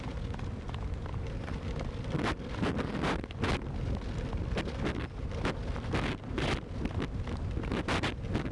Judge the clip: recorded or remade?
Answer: recorded